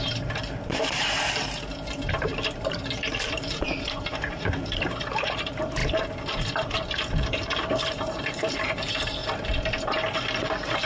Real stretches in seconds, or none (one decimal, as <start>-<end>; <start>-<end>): 5.8-6.7; 9.2-10.3